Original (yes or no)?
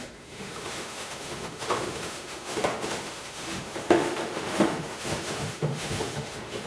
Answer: no